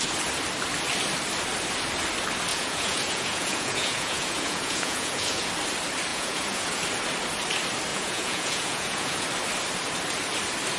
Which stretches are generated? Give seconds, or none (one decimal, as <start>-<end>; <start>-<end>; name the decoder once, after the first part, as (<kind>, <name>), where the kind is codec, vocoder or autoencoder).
2.5-5.5 (vocoder, Vocos); 6.1-6.8; 7.9-9.3